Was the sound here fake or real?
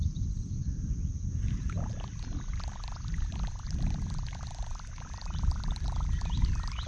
fake